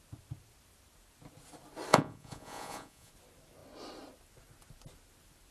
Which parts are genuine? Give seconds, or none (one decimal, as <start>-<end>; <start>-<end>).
0.0-1.9; 3.1-5.5